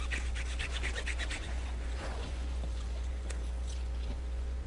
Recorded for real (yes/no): no